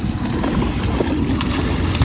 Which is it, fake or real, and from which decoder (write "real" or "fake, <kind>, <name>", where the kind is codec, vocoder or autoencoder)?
real